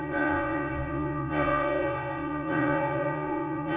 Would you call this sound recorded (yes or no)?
no